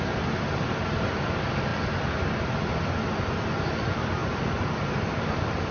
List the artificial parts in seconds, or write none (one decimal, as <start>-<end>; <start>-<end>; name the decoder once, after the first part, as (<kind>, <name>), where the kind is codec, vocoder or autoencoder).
4.2-5.2 (vocoder, BigVGAN v2)